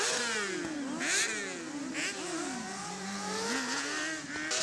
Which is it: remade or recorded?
recorded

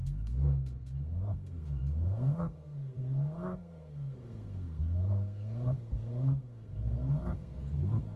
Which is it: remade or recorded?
remade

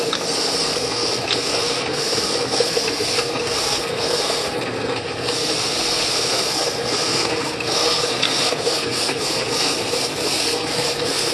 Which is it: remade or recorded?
remade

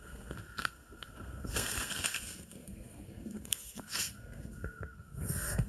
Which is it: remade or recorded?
remade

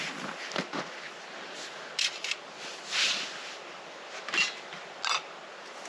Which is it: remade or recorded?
recorded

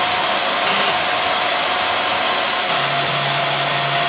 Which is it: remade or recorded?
recorded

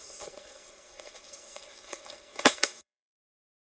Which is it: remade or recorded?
remade